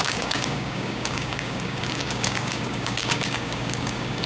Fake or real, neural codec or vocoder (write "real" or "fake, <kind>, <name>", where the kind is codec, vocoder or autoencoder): fake, codec, DAC